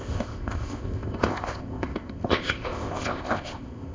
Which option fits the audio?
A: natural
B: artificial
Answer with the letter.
B